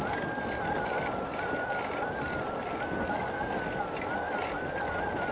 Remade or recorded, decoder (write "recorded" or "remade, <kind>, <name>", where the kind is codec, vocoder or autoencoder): recorded